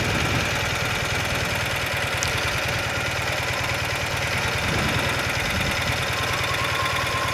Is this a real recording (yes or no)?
yes